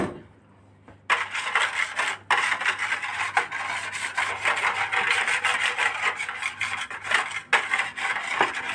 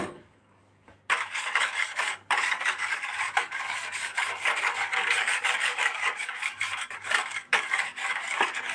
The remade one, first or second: second